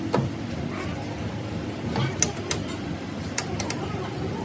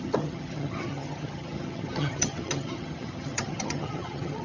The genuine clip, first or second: first